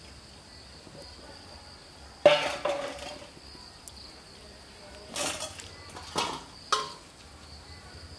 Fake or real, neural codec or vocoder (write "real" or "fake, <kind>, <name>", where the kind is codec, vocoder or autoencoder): real